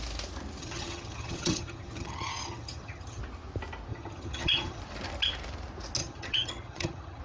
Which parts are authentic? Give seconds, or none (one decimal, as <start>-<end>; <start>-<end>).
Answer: 0.0-0.6; 3.2-3.9; 4.8-6.0